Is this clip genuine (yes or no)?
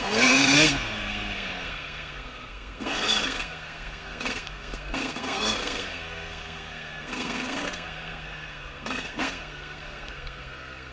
no